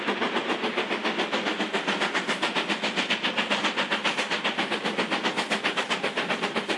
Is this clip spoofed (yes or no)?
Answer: no